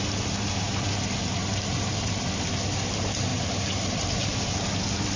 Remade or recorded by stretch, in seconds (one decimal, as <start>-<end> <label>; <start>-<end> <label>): 0.0-1.4 recorded; 1.4-2.2 remade; 2.2-3.3 recorded; 3.3-4.5 remade; 4.5-5.2 recorded